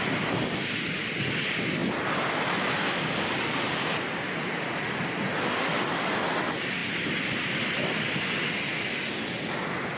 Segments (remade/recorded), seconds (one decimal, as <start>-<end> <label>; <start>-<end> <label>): 0.0-10.0 recorded